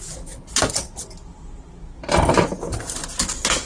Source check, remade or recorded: recorded